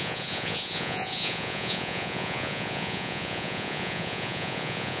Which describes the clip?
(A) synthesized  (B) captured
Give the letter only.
A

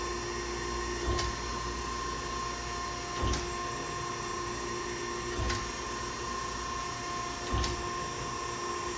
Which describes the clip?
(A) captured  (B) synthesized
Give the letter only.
A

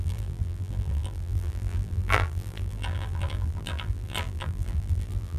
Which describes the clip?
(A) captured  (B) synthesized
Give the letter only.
B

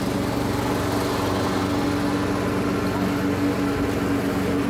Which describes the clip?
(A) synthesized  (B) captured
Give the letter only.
B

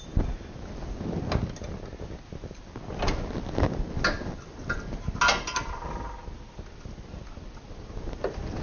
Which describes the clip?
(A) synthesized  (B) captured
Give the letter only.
B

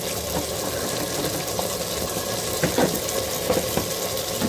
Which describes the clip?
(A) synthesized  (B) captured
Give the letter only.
B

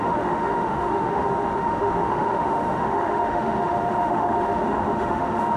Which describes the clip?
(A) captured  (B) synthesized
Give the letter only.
B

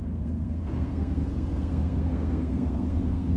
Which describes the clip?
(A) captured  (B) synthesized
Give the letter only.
B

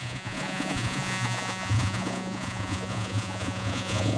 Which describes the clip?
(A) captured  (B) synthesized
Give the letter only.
B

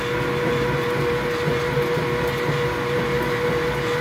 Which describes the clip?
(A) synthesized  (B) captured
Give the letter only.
B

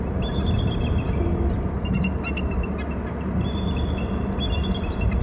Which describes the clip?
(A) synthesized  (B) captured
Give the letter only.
B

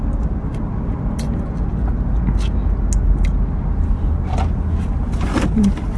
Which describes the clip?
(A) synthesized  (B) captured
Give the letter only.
B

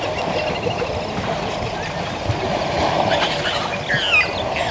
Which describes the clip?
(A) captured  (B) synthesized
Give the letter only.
A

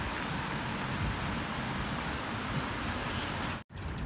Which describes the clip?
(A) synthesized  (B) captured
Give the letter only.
B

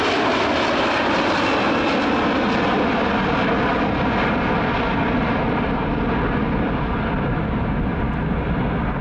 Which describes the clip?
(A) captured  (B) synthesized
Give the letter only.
A